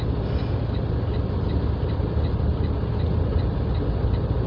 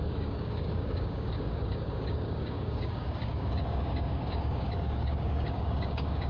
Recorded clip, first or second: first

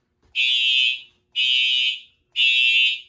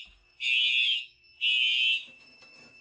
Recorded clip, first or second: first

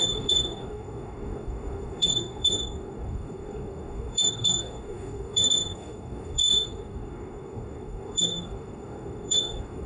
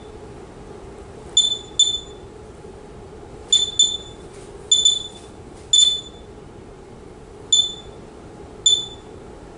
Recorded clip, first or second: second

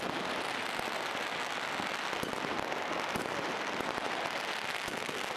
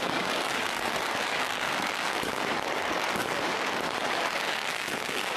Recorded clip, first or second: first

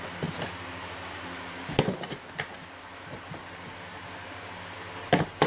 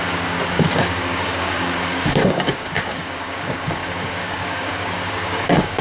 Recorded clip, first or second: first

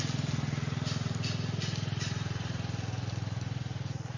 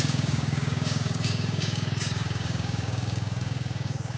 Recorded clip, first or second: first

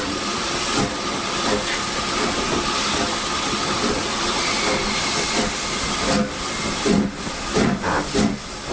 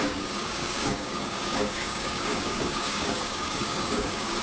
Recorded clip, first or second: first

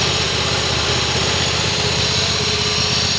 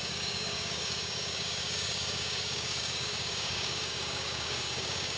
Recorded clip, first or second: first